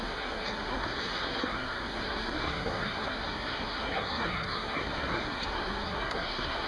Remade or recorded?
remade